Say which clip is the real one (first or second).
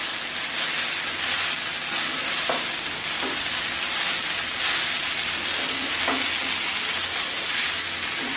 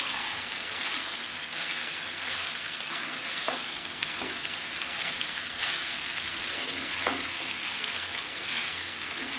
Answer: first